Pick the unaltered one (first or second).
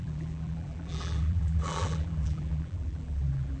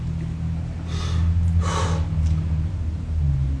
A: second